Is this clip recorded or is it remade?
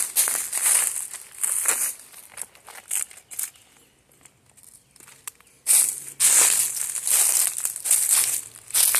recorded